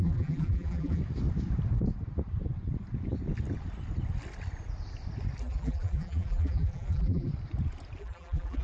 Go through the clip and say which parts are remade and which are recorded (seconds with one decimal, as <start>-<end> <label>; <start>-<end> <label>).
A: 0.0-1.0 remade; 1.0-5.4 recorded; 5.4-7.3 remade; 7.3-8.0 recorded; 8.0-8.6 remade